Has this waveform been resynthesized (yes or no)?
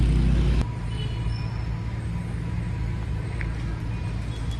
no